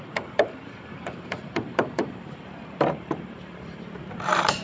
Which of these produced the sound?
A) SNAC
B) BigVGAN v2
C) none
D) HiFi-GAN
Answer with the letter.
B